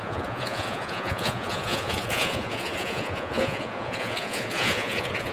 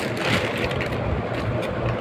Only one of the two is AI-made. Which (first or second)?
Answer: first